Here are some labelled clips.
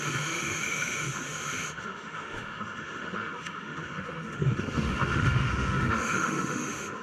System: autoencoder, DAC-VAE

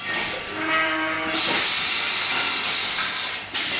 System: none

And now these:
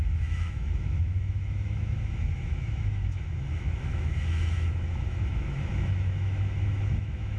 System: autoencoder, DAC-VAE